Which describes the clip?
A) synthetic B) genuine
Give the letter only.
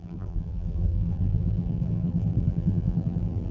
A